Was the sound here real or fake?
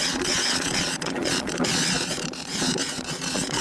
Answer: fake